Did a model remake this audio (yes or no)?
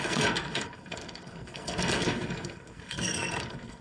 yes